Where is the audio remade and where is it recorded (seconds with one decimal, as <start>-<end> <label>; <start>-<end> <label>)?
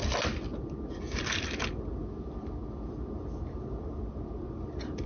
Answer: 0.0-5.1 recorded